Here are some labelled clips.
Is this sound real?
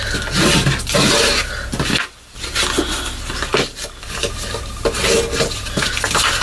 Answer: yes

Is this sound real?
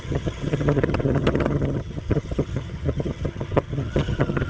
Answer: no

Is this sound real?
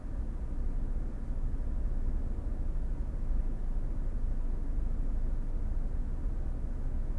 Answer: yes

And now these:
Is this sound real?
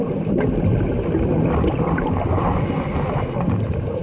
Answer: yes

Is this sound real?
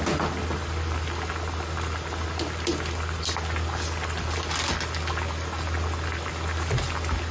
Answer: yes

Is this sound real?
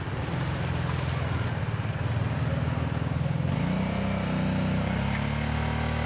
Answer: yes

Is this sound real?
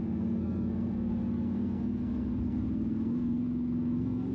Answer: no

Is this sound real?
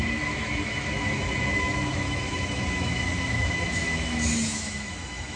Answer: no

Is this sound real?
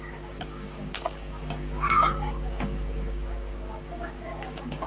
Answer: no